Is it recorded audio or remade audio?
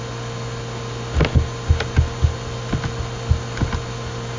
recorded